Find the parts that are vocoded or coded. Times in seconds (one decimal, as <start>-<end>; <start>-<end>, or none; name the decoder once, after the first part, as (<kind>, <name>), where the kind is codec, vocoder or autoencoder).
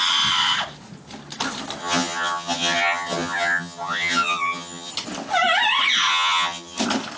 1.8-4.9 (vocoder, HiFi-GAN); 6.1-6.8